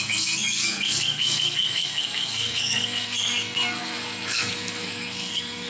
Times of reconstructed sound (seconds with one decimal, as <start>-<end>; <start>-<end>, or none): 0.0-5.7